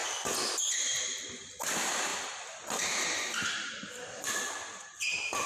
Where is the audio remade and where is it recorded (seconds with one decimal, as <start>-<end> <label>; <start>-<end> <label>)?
0.0-2.1 recorded; 2.1-5.5 remade